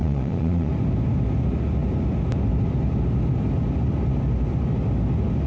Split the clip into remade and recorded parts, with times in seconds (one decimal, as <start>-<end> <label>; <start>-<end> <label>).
0.0-0.7 remade; 0.7-5.5 recorded

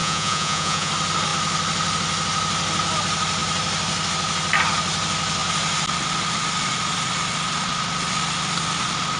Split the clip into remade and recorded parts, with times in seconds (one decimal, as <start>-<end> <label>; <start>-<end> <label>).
0.0-0.9 remade; 0.9-9.2 recorded

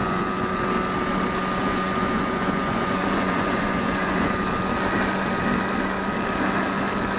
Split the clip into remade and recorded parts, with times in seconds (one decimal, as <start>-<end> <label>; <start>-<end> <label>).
0.0-0.7 remade; 0.7-1.6 recorded; 1.6-4.5 remade; 4.5-7.2 recorded

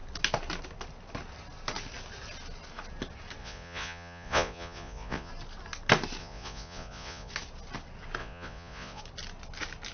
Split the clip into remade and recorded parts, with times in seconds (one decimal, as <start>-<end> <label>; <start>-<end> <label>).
0.0-3.4 recorded; 3.4-5.3 remade; 5.3-6.2 recorded; 6.2-7.3 remade; 7.3-8.2 recorded; 8.2-9.0 remade; 9.0-9.9 recorded